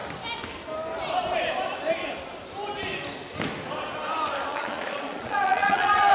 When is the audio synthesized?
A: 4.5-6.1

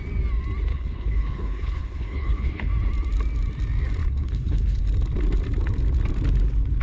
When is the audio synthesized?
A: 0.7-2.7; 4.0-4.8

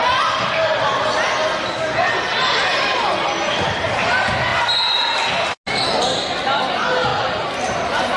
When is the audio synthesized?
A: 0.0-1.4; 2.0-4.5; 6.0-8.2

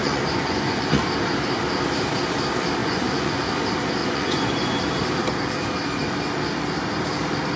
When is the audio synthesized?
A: 0.0-1.0; 2.8-3.4; 4.0-4.8

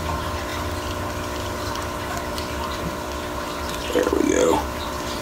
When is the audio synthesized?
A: 0.0-0.5; 1.7-5.2

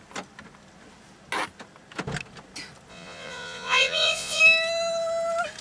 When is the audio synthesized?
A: 2.9-4.4

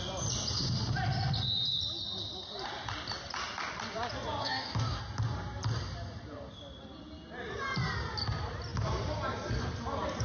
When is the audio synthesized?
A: 4.4-5.0